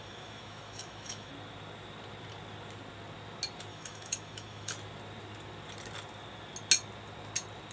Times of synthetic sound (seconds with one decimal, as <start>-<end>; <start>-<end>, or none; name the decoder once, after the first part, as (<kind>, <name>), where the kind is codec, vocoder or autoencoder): 0.0-1.3 (autoencoder, DAC-VAE); 3.7-4.7